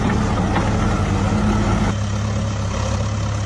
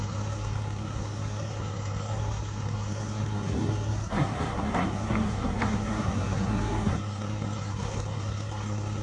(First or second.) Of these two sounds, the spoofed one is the second